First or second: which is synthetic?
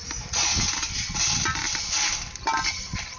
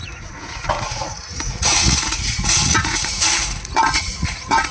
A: second